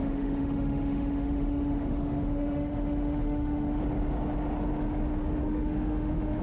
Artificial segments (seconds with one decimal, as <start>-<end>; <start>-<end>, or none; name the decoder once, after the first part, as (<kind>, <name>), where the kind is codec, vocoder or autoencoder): 0.0-3.8 (autoencoder, DAC-VAE); 5.4-6.4